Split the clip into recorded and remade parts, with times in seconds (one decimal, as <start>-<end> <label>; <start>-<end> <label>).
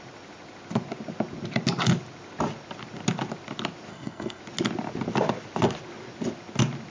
0.0-3.9 recorded; 3.9-4.4 remade; 4.4-6.9 recorded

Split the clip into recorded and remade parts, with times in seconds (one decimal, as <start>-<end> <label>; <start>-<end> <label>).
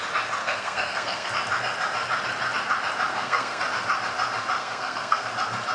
0.0-0.4 recorded; 0.4-1.3 remade; 1.3-3.1 recorded; 3.1-3.6 remade; 3.6-4.6 recorded; 4.6-5.3 remade; 5.3-5.7 recorded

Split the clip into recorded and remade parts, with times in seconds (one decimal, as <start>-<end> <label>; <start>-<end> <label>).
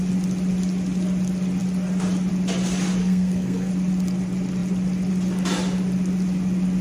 0.0-3.0 recorded; 3.0-3.7 remade; 3.7-6.8 recorded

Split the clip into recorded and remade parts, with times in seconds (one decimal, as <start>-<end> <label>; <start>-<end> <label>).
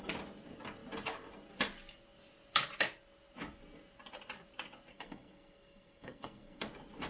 0.0-4.9 recorded; 4.9-6.6 remade; 6.6-7.1 recorded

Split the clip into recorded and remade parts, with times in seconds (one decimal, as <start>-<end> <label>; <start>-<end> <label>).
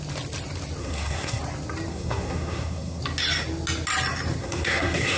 0.0-0.8 recorded; 0.8-1.4 remade; 1.4-1.9 recorded; 1.9-3.0 remade; 3.0-4.4 recorded; 4.4-5.2 remade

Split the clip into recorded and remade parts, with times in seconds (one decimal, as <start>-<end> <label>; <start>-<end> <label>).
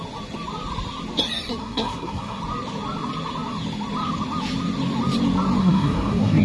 0.0-1.6 recorded; 1.6-2.4 remade; 2.4-5.6 recorded; 5.6-6.4 remade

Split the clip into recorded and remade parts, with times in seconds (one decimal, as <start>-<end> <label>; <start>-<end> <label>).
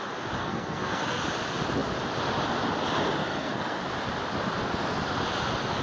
0.0-0.4 recorded; 0.4-1.2 remade; 1.2-3.2 recorded; 3.2-3.8 remade; 3.8-5.8 recorded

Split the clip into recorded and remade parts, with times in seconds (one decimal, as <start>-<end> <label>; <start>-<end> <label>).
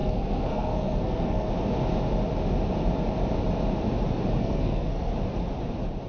0.0-1.5 remade; 1.5-4.4 recorded; 4.4-5.1 remade; 5.1-6.1 recorded